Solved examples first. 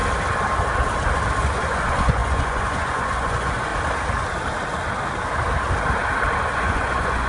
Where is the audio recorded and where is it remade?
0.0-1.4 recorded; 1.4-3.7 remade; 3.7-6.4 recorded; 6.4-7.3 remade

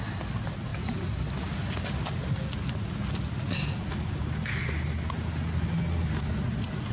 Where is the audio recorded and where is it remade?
0.0-6.9 recorded

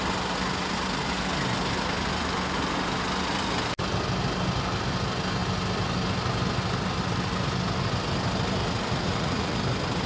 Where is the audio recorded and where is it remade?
0.0-8.6 recorded; 8.6-9.6 remade; 9.6-10.1 recorded

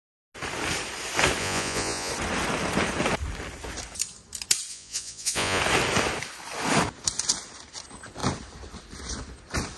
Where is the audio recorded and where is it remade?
0.0-1.4 recorded; 1.4-2.1 remade; 2.1-4.7 recorded; 4.7-5.6 remade; 5.6-9.8 recorded